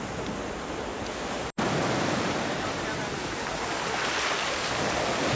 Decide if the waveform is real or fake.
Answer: real